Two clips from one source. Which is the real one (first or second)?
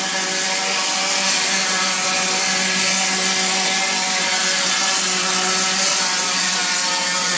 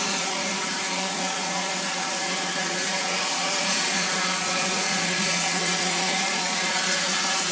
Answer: first